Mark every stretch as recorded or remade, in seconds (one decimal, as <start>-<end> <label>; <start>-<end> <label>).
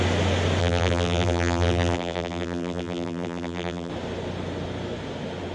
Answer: 0.0-0.6 recorded; 0.6-3.9 remade; 3.9-5.5 recorded